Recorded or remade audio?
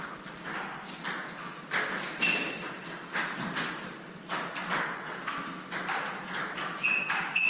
recorded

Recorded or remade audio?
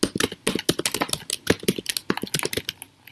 recorded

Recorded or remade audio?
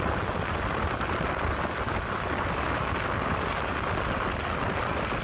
recorded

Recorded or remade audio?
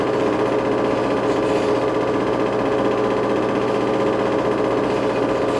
recorded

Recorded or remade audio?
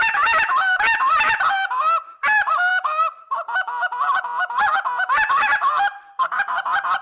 remade